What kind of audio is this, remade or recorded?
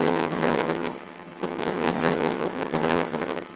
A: remade